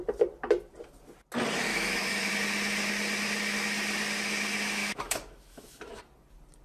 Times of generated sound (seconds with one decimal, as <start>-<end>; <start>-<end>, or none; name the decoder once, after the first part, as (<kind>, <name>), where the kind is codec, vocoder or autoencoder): 1.7-2.3 (autoencoder, DAC-VAE); 4.8-6.0